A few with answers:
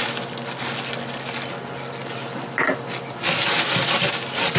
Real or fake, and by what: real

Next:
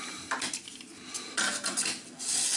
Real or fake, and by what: real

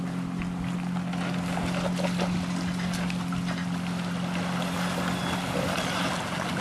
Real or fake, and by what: real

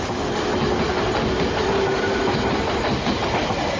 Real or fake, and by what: real